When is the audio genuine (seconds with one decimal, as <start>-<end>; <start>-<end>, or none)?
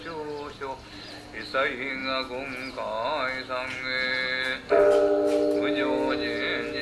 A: 0.0-6.8